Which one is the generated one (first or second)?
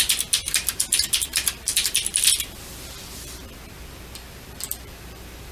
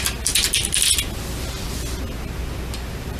first